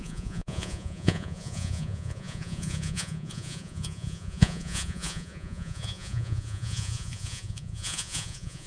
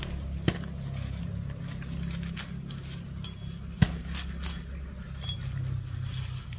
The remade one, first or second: first